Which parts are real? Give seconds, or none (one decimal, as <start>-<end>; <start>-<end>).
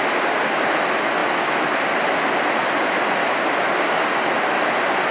0.0-5.1